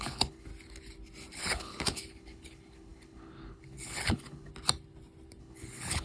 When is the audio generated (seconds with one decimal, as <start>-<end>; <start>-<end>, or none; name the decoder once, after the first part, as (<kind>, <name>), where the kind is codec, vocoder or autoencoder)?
0.0-0.5 (codec, HILCodec); 1.3-4.5; 5.4-6.0